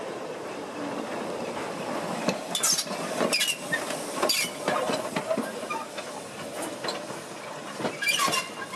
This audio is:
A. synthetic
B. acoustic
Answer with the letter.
B